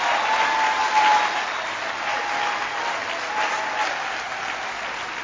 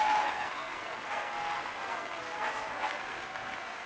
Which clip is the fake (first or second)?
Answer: second